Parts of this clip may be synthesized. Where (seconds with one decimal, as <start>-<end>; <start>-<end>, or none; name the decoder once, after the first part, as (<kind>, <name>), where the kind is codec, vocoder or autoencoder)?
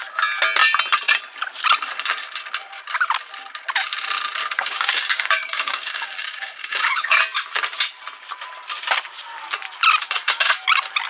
4.4-7.2 (codec, DAC); 10.0-10.6